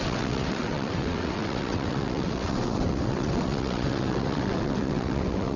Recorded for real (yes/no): no